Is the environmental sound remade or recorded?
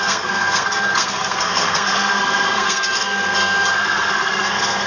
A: remade